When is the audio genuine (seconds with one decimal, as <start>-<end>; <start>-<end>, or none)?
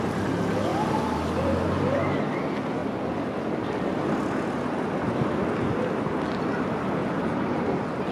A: 0.0-8.1